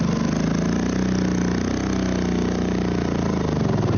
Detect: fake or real real